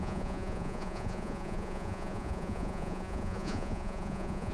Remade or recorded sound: remade